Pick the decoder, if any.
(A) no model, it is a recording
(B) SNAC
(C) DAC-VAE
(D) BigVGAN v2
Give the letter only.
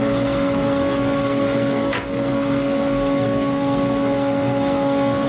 B